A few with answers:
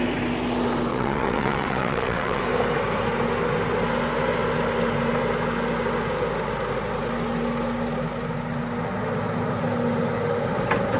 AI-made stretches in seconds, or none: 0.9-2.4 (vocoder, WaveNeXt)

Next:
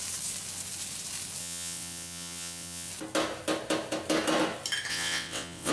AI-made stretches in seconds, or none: 1.4-2.9 (vocoder, WaveNeXt); 4.9-5.7

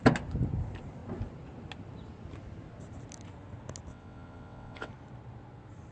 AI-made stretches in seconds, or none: 3.9-4.9 (vocoder, WaveNeXt)